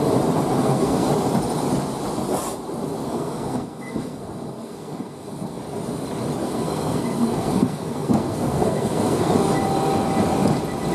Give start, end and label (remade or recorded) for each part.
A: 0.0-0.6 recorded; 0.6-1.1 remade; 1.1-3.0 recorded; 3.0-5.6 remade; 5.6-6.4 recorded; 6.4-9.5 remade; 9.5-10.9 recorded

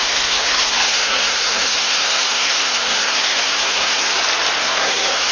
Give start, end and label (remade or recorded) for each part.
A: 0.0-4.1 remade; 4.1-4.6 recorded; 4.6-5.3 remade